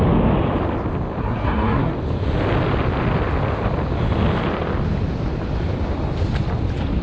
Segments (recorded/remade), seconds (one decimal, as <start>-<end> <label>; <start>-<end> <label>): 0.0-1.2 recorded; 1.2-1.9 remade; 1.9-7.0 recorded